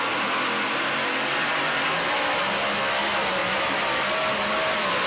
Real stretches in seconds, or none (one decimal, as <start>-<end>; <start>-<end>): 0.0-1.4; 2.5-3.4; 3.9-4.3